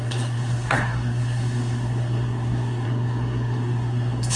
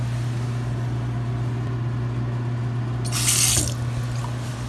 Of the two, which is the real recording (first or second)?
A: second